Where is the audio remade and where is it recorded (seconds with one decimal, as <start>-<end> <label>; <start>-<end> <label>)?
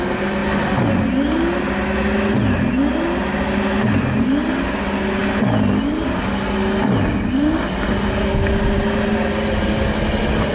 0.0-10.5 recorded